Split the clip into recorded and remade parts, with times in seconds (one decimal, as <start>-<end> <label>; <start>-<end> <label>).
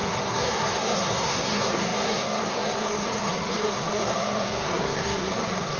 0.0-5.8 remade